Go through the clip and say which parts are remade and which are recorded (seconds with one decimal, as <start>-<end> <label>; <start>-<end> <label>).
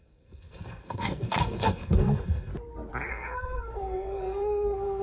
0.0-2.5 remade; 2.5-3.1 recorded; 3.1-5.0 remade